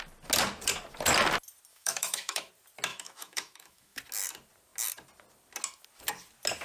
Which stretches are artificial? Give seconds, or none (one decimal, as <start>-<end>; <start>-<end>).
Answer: 1.7-2.5; 2.9-4.0